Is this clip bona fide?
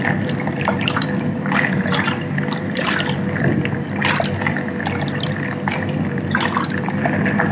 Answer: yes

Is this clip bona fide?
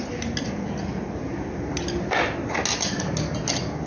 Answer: yes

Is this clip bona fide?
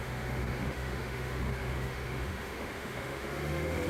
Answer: no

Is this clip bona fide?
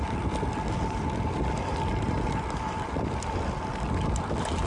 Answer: yes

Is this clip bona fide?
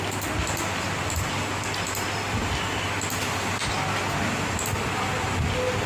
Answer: yes